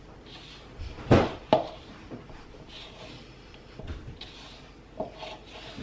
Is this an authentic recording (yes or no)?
yes